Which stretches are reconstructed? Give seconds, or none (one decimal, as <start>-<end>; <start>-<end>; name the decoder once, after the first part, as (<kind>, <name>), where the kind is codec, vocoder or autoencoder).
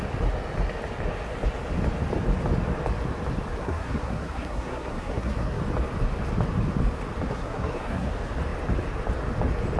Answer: 3.6-5.6 (codec, SNAC); 7.3-8.1